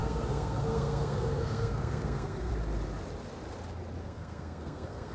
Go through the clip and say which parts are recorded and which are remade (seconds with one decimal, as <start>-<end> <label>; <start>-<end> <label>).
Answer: 0.0-2.5 remade; 2.5-4.0 recorded; 4.0-5.1 remade